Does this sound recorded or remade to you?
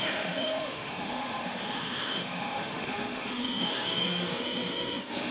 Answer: remade